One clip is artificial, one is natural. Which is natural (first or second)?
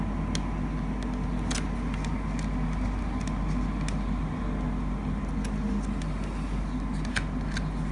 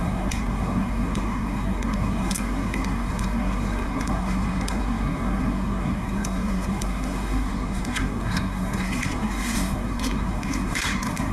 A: first